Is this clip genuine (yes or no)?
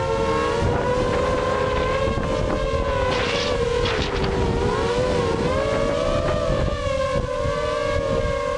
yes